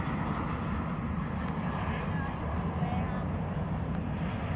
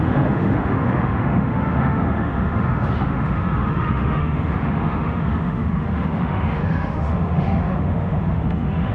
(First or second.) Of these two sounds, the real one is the first